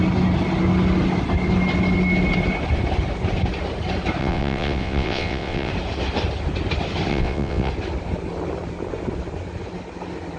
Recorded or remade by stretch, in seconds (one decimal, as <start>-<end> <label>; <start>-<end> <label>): 0.0-4.2 recorded; 4.2-5.7 remade; 5.7-7.1 recorded; 7.1-7.7 remade; 7.7-10.4 recorded

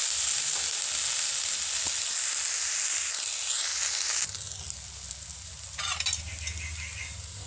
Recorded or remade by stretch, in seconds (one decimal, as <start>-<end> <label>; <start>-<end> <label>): 0.0-7.5 recorded

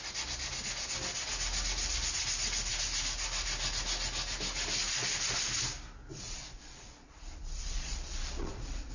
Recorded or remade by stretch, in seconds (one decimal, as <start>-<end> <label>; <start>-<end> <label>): 0.0-6.1 recorded; 6.1-8.9 remade

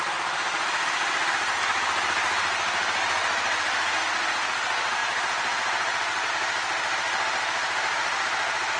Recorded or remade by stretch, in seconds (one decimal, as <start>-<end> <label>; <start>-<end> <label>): 0.0-8.8 recorded